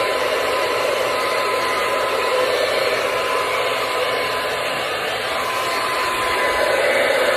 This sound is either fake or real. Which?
fake